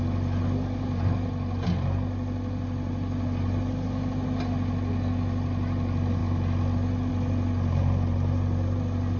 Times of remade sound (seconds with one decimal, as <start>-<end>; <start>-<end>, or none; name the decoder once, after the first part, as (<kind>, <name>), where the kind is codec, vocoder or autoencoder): none